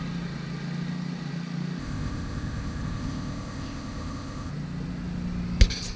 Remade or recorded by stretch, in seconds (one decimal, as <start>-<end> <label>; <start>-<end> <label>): 0.0-1.8 recorded; 1.8-4.5 remade; 4.5-6.0 recorded